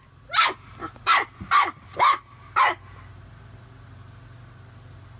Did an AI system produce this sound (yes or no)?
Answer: no